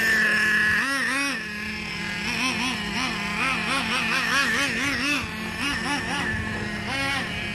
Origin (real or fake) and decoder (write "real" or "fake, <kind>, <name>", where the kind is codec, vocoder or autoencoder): real